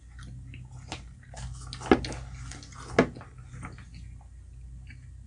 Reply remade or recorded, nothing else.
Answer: recorded